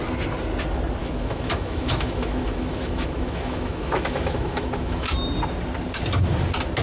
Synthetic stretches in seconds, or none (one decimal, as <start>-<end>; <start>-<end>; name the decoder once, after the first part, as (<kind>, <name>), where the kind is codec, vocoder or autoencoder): 1.0-5.1 (autoencoder, DAC-VAE)